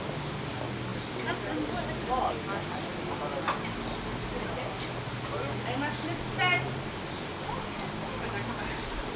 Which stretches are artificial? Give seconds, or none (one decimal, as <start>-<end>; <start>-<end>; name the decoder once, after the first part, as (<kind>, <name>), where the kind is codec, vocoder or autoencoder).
none